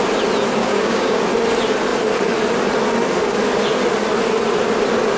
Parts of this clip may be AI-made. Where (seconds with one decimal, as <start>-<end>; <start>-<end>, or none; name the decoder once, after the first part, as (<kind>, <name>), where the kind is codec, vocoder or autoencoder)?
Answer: 0.6-1.2 (codec, DAC)